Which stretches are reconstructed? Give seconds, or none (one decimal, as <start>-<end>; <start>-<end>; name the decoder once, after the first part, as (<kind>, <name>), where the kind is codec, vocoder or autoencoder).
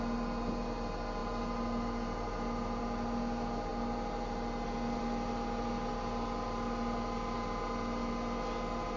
none